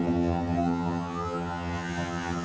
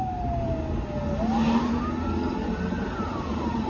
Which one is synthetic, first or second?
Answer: first